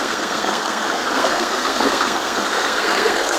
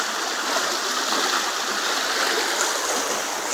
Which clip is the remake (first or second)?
first